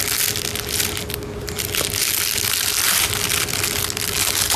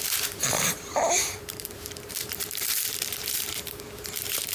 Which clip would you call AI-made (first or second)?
second